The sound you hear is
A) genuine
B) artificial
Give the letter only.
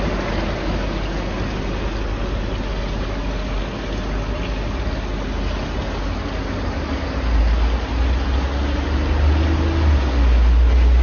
A